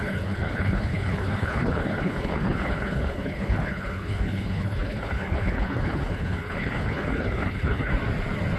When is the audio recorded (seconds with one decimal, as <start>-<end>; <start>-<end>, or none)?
7.9-8.6

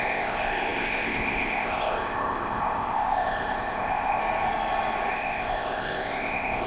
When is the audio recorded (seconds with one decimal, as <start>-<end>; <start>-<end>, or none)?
4.2-5.1

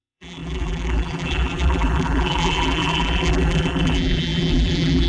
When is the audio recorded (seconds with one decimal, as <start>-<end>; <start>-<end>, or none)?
none

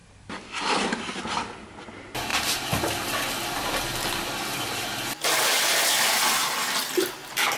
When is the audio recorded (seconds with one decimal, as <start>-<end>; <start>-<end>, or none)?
0.0-2.3; 6.0-7.6

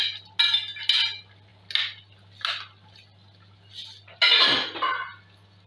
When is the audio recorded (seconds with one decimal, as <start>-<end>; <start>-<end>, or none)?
0.0-5.7

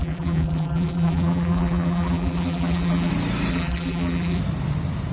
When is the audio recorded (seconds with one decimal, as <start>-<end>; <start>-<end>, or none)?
3.1-3.5; 4.4-5.1

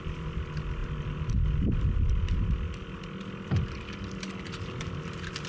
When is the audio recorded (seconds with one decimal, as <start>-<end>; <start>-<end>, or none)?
0.0-5.5

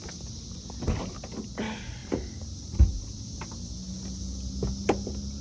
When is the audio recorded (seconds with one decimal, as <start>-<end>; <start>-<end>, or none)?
0.0-2.0; 3.4-5.4